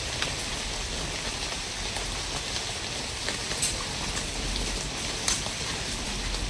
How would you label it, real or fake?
real